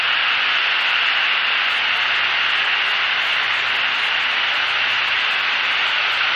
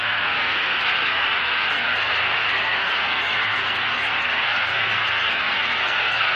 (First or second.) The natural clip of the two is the first